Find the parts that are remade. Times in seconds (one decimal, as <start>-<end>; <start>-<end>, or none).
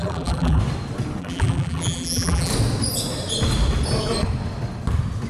0.0-0.6; 1.2-2.5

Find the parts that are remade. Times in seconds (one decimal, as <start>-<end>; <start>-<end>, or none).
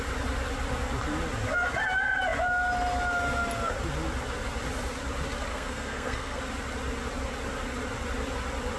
5.5-6.4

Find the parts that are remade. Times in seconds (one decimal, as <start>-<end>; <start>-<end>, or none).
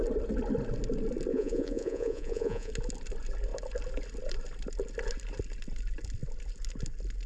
1.3-2.7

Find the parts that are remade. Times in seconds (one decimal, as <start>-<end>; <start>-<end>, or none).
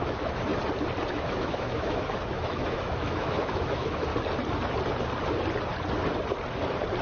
0.0-0.5; 1.1-4.1